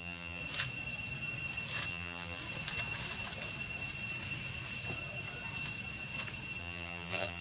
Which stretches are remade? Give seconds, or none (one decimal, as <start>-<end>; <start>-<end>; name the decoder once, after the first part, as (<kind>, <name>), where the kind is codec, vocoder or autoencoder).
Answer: 0.0-0.4 (vocoder, BigVGAN v2); 1.9-2.4; 6.6-7.4